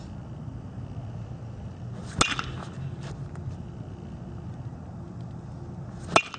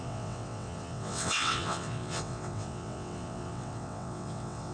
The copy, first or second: second